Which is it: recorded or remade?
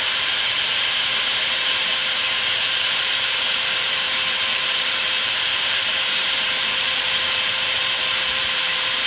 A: remade